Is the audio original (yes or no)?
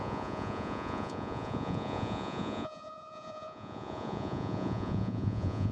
no